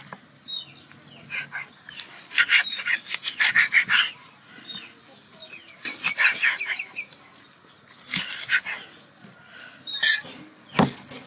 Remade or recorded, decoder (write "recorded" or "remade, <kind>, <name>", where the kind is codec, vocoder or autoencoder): recorded